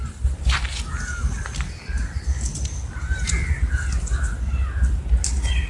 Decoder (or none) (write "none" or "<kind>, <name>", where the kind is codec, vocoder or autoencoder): none